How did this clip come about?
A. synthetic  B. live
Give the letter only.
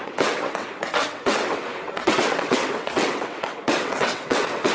A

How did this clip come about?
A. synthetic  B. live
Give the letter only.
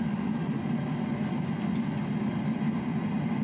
B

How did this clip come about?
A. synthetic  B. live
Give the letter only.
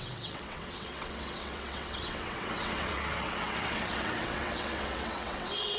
A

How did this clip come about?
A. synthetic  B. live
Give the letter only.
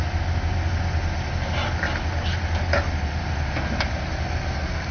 B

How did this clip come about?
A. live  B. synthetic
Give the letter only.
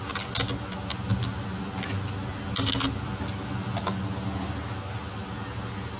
A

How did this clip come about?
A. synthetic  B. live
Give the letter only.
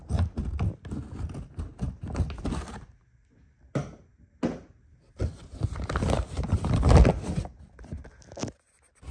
B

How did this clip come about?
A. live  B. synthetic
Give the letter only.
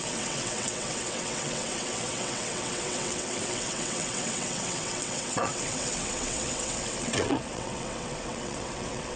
B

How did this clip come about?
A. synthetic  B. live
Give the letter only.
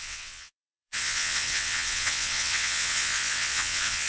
A